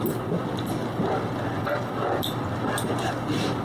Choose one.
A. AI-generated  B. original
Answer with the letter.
B